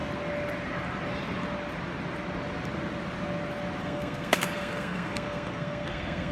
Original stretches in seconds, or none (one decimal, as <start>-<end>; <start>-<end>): 0.0-3.8